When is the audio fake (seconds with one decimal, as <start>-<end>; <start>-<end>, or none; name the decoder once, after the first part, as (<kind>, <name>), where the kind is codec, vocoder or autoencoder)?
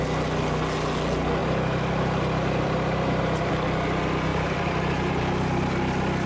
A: 1.4-3.5 (vocoder, BigVGAN v2); 4.3-5.2